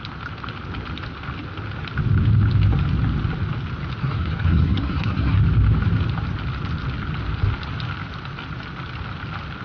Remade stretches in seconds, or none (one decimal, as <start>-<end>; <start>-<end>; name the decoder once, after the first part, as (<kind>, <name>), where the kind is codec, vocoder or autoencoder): 4.0-5.4 (codec, SNAC)